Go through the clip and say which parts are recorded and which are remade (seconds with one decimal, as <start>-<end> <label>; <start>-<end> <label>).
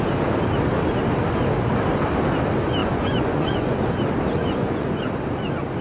0.0-2.8 recorded; 2.8-3.8 remade; 3.8-4.4 recorded; 4.4-5.0 remade; 5.0-5.8 recorded